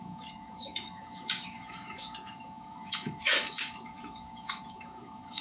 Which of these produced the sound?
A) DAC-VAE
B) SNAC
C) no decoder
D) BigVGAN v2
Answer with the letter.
A